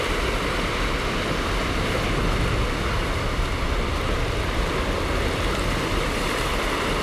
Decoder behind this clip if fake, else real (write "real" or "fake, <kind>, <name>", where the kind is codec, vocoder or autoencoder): real